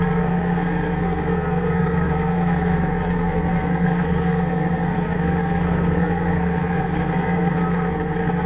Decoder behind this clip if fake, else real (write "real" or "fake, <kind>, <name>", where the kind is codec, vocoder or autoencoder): fake, codec, SNAC